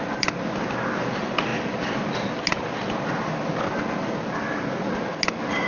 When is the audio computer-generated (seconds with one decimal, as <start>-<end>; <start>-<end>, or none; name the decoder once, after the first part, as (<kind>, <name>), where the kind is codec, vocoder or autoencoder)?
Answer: none